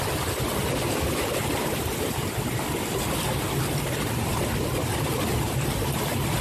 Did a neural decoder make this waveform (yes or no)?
yes